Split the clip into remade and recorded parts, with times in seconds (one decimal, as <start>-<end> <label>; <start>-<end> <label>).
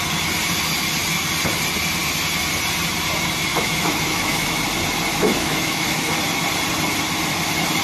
0.0-3.5 recorded; 3.5-4.6 remade; 4.6-5.1 recorded; 5.1-6.1 remade; 6.1-7.8 recorded